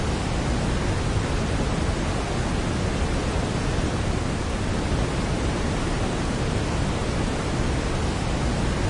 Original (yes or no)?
yes